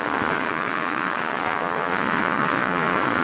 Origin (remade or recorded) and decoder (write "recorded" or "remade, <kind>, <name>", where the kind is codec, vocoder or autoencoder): remade, vocoder, Vocos